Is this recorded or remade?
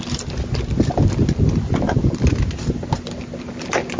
recorded